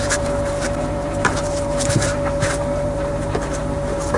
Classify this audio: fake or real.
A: fake